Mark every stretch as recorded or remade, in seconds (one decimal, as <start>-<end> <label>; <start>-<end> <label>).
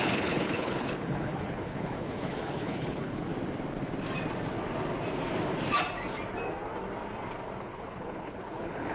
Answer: 0.0-3.3 remade; 3.3-7.6 recorded; 7.6-8.9 remade